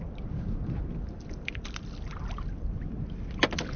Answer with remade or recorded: recorded